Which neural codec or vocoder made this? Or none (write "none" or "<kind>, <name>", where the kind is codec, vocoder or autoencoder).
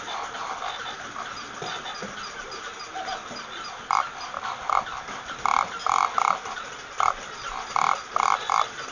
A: none